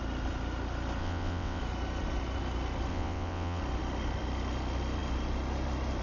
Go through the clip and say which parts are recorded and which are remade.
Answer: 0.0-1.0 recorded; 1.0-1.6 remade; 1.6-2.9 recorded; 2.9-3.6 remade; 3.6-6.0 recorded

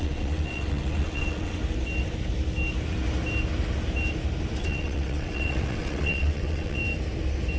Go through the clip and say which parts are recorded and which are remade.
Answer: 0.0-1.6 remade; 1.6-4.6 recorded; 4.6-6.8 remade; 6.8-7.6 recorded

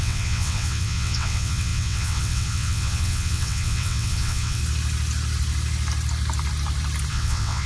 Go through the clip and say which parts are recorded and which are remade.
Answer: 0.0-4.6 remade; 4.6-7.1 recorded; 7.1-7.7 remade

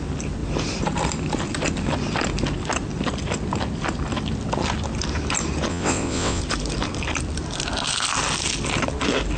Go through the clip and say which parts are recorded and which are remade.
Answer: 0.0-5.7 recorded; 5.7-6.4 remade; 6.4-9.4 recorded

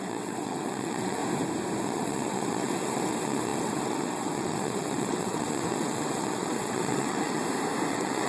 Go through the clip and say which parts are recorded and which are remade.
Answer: 0.0-1.2 remade; 1.2-1.8 recorded; 1.8-7.4 remade; 7.4-7.9 recorded; 7.9-8.3 remade

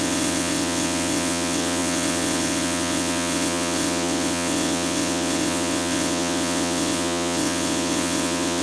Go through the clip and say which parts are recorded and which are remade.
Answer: 0.0-8.6 remade

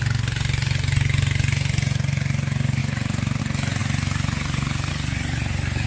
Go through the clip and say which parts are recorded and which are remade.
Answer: 0.0-5.9 recorded